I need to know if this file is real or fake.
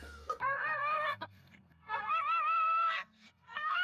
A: fake